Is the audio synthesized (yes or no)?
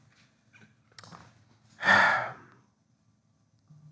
no